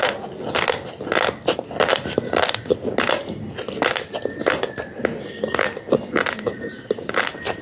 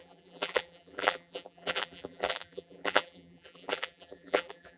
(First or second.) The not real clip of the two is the second